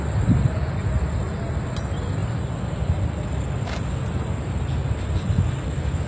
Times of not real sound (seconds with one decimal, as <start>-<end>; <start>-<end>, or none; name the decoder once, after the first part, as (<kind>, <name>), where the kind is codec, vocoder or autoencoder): none